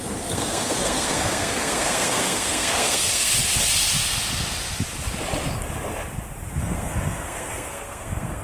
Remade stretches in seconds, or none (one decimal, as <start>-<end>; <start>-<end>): 0.0-3.3; 6.6-8.4